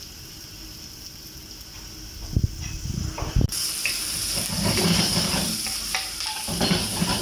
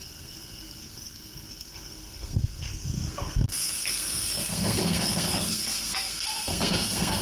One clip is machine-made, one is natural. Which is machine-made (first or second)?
second